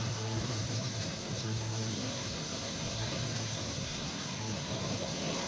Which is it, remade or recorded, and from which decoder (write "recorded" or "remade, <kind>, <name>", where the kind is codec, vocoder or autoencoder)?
remade, codec, SNAC